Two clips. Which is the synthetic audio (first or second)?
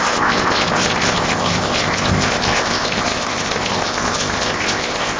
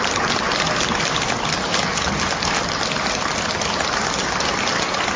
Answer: first